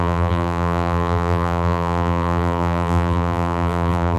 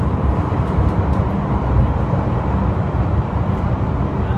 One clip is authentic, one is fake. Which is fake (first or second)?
first